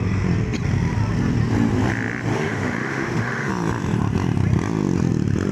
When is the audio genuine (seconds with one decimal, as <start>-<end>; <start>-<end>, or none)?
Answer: 0.0-2.3; 3.5-5.5